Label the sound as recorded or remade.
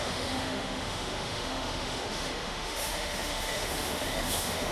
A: remade